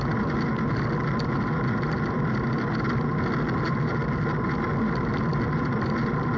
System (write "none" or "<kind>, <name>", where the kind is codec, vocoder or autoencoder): none